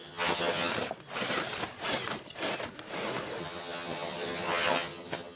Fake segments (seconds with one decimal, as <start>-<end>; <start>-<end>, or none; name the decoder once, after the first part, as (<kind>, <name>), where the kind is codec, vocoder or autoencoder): 0.0-0.7 (vocoder, HiFi-GAN); 3.4-5.4